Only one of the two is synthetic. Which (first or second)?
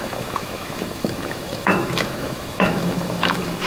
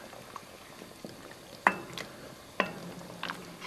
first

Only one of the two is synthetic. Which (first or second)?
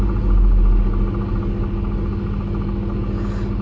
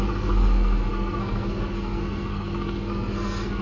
second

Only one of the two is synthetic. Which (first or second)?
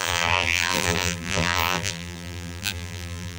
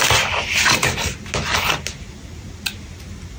first